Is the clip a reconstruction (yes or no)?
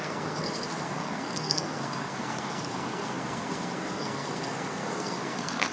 yes